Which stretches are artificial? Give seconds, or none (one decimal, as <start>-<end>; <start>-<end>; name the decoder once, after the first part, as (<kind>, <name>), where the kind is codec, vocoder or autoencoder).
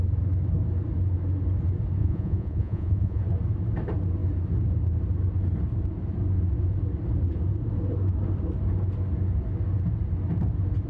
2.0-3.2 (vocoder, Vocos)